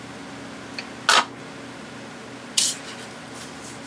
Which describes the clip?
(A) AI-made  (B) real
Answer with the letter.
B